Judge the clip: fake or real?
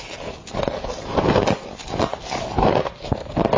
real